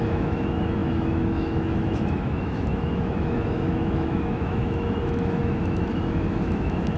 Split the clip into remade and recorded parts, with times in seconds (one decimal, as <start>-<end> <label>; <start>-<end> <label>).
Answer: 0.0-7.0 remade